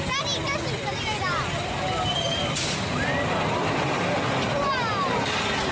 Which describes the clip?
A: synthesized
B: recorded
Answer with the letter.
B